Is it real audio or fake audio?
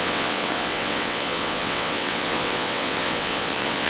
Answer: fake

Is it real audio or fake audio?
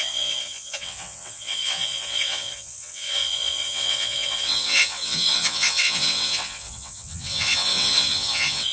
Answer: fake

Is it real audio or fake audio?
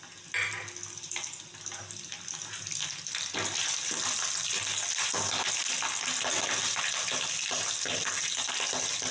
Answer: real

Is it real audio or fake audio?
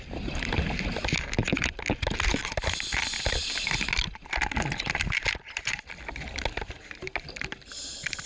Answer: real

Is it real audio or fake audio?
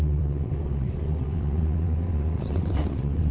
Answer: fake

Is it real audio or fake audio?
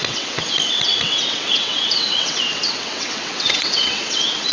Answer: fake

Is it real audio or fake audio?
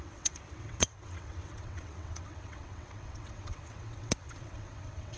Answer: fake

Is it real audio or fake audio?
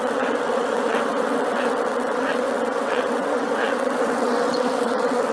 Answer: fake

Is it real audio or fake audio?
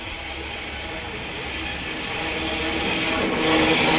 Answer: real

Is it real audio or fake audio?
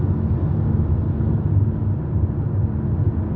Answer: real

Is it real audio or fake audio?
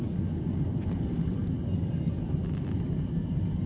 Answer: real